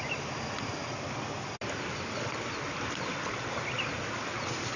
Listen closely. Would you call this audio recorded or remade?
recorded